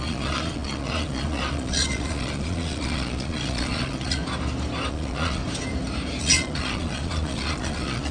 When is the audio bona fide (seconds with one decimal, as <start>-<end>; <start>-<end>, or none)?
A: 4.2-4.9; 5.4-6.2